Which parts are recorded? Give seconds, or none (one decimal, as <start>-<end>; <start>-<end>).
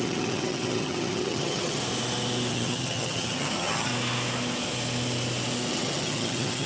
1.8-2.5; 3.9-5.7